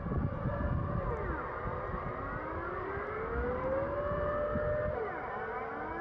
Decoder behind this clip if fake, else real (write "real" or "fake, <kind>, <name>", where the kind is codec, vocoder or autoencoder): real